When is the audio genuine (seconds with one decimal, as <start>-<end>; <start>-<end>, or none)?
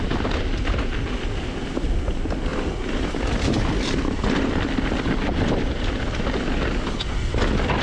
0.0-2.5; 5.8-7.8